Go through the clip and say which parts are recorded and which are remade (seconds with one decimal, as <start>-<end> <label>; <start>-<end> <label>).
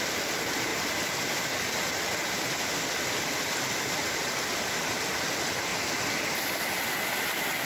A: 0.0-7.7 recorded